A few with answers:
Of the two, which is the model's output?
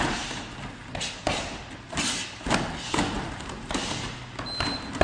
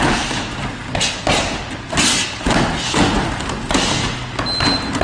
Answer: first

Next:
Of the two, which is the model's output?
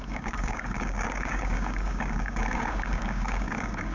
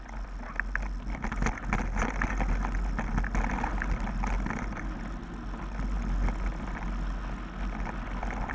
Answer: first